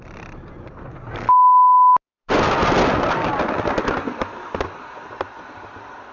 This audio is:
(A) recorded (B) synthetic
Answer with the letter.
A